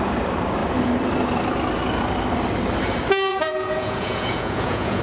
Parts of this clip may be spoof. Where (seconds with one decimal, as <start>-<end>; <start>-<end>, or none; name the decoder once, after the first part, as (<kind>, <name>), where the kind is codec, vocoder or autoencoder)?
3.3-5.0 (vocoder, Vocos)